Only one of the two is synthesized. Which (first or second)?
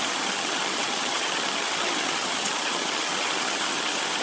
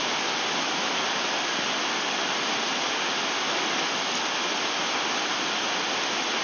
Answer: first